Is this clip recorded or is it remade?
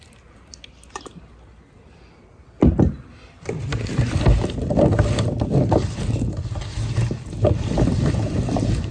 recorded